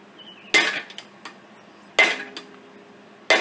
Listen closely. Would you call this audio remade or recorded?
recorded